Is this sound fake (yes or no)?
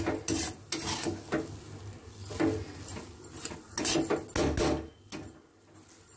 no